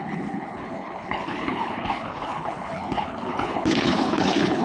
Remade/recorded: remade